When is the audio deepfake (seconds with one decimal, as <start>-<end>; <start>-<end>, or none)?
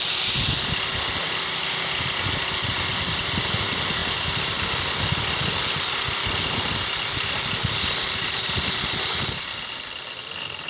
none